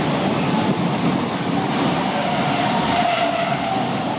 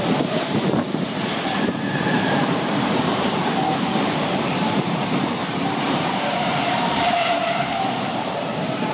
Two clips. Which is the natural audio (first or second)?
first